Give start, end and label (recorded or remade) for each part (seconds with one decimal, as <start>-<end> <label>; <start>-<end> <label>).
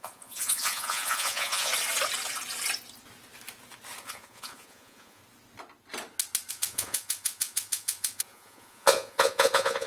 0.0-1.7 remade; 1.7-4.0 recorded; 4.0-5.2 remade; 5.2-6.5 recorded; 6.5-9.9 remade